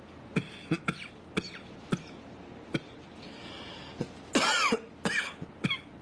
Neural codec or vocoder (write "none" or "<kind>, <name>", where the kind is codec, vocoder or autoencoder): none